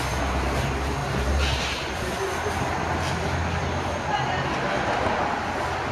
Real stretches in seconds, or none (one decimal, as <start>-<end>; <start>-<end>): 0.0-1.0; 1.9-5.9

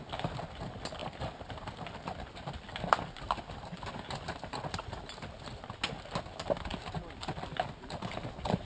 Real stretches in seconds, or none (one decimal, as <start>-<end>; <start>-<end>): 0.0-1.0; 2.5-8.6